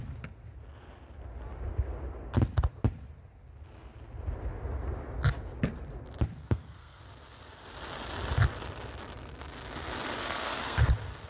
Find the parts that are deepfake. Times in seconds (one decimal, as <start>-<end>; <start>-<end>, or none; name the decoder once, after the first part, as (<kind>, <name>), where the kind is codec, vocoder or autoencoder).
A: 6.4-7.0 (codec, SNAC); 10.2-10.9